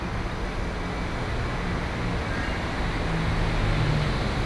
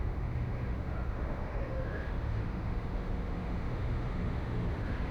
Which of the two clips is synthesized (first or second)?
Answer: second